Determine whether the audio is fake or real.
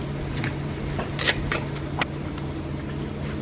real